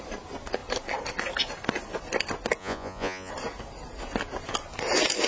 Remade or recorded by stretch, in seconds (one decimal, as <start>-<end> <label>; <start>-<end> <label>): 0.0-2.6 recorded; 2.6-3.3 remade; 3.3-5.3 recorded